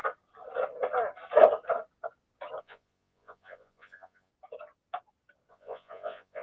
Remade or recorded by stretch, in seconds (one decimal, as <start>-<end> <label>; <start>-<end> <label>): 0.0-2.6 recorded; 2.6-4.3 remade; 4.3-5.5 recorded; 5.5-6.4 remade